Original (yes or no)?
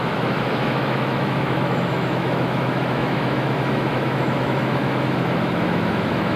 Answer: no